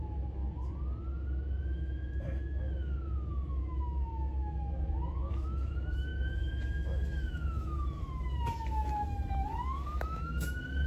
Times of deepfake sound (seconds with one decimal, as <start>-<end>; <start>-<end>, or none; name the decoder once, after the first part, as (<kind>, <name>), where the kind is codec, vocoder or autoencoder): 0.0-0.4 (autoencoder, DAC-VAE); 1.6-10.9